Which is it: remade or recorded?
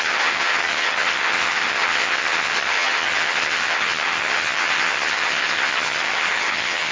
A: remade